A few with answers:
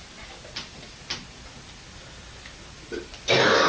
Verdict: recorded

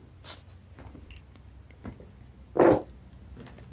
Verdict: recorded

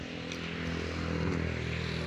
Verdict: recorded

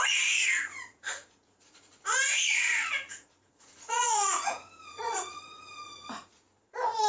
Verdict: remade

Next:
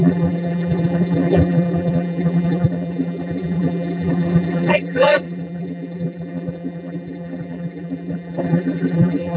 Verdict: remade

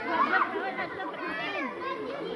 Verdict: recorded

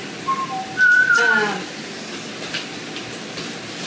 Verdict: recorded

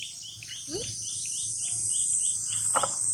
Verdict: recorded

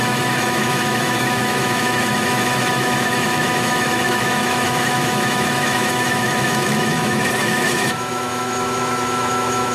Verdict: remade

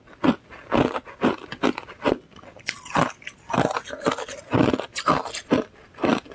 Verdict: recorded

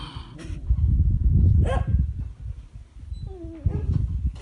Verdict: recorded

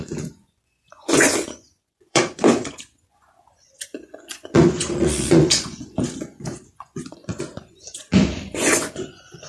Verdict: remade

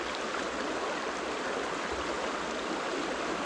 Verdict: recorded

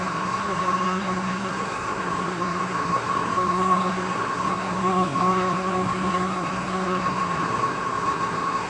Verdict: remade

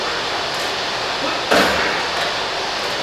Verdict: recorded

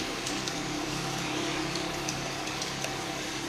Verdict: remade